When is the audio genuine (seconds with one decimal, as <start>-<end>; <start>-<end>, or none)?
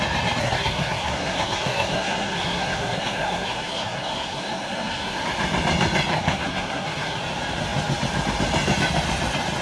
0.0-0.4; 5.2-6.1; 7.2-9.6